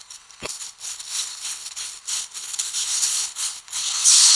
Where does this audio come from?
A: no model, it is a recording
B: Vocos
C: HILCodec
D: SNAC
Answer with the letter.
C